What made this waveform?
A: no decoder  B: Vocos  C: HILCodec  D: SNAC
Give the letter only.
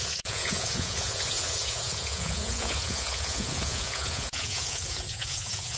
B